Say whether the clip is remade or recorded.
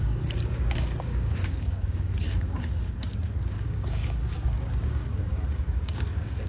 remade